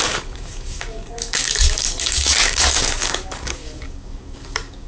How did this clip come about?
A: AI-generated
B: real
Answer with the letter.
A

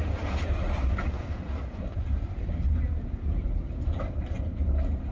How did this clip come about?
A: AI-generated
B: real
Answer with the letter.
B